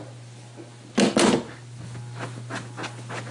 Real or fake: real